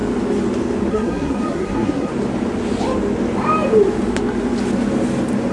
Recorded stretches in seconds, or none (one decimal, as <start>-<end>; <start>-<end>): 0.0-0.9; 2.1-5.5